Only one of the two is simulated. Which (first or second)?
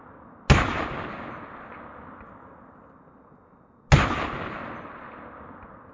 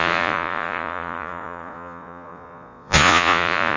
second